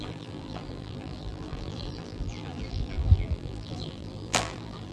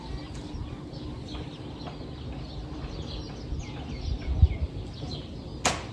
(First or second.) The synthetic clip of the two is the first